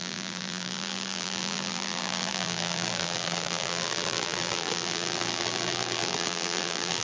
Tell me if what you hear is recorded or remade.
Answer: remade